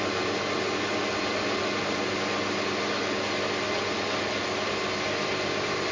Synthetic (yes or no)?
no